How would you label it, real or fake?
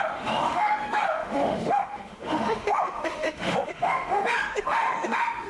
fake